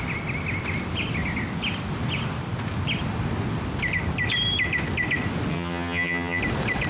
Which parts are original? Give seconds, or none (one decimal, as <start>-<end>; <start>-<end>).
0.0-5.5; 6.4-6.9